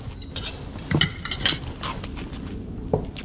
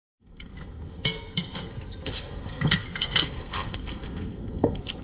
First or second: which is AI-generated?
second